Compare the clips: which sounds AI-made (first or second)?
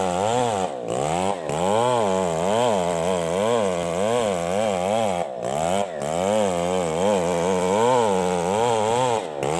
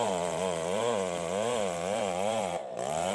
second